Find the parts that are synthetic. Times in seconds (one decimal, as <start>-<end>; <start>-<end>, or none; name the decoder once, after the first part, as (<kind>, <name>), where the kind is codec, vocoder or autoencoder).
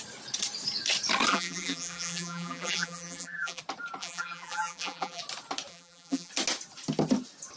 1.3-3.6 (vocoder, BigVGAN v2); 4.0-5.2; 5.7-6.3